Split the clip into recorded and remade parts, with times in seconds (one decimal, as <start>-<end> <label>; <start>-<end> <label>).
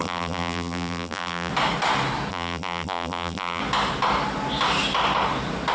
0.0-1.5 remade; 1.5-2.3 recorded; 2.3-3.6 remade; 3.6-5.7 recorded